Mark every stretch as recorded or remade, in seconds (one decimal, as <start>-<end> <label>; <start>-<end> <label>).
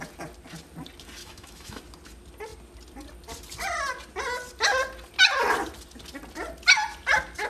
0.0-1.2 recorded; 1.2-1.8 remade; 1.8-7.5 recorded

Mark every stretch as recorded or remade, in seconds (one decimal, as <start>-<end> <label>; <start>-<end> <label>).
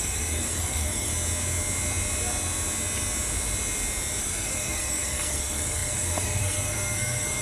0.0-1.1 remade; 1.1-4.2 recorded; 4.2-7.4 remade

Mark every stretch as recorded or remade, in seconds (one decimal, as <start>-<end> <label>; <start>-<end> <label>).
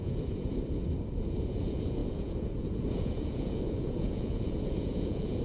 0.0-0.6 remade; 0.6-1.2 recorded; 1.2-5.4 remade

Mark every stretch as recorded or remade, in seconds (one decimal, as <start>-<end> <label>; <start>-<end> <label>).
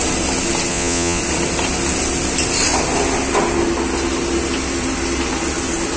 0.0-0.7 recorded; 0.7-1.2 remade; 1.2-6.0 recorded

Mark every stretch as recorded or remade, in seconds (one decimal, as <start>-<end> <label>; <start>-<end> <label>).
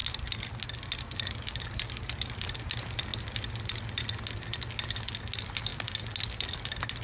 0.0-7.0 recorded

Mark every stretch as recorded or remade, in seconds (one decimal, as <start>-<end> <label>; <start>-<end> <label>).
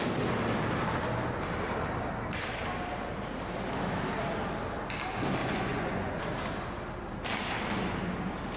0.0-5.4 recorded; 5.4-6.2 remade; 6.2-8.6 recorded